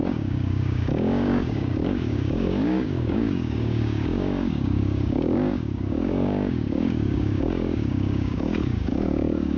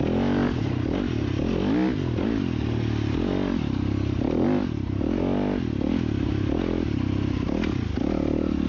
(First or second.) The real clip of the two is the second